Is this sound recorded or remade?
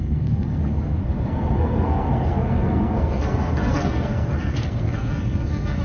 remade